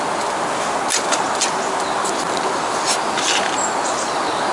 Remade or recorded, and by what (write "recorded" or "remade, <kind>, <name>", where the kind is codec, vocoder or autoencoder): recorded